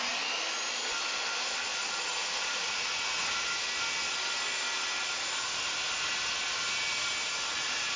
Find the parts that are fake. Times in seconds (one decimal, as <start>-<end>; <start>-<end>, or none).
1.7-3.4